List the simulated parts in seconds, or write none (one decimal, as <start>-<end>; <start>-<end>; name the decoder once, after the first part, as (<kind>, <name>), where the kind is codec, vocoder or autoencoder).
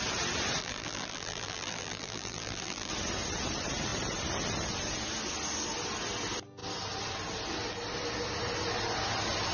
0.6-2.9 (vocoder, BigVGAN v2)